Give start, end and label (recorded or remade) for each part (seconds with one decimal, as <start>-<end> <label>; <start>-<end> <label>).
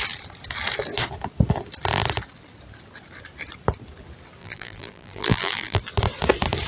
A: 0.0-4.4 recorded; 4.4-5.8 remade; 5.8-6.7 recorded